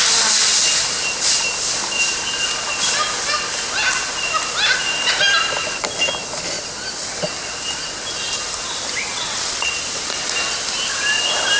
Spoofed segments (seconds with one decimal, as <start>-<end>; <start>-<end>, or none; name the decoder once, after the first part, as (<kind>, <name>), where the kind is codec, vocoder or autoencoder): 9.1-9.7 (vocoder, WaveNeXt)